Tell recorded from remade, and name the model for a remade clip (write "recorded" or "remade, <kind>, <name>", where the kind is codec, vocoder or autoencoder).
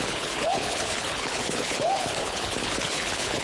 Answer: remade, codec, HILCodec